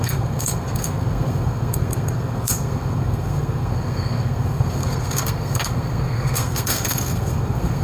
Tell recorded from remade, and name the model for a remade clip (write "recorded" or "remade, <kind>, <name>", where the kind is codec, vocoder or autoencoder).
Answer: remade, codec, SNAC